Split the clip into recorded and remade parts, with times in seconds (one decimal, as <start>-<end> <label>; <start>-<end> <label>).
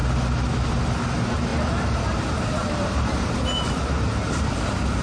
0.0-1.5 recorded; 1.5-4.5 remade; 4.5-5.0 recorded